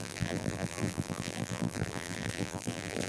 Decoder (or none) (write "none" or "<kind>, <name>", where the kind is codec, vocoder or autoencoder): vocoder, BigVGAN v2